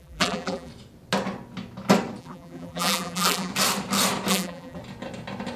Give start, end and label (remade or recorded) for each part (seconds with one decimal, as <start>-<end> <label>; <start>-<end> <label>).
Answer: 0.0-0.7 remade; 0.7-2.2 recorded; 2.2-3.5 remade; 3.5-4.3 recorded; 4.3-4.8 remade; 4.8-5.6 recorded